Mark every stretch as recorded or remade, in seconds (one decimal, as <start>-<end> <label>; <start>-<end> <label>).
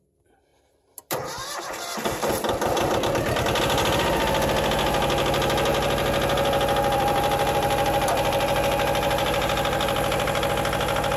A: 0.0-0.5 recorded; 0.5-3.6 remade; 3.6-5.7 recorded; 5.7-10.5 remade; 10.5-11.2 recorded